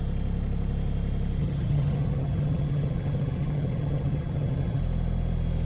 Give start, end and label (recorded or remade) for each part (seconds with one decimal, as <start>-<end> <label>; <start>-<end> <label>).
0.0-1.4 recorded; 1.4-4.8 remade; 4.8-5.6 recorded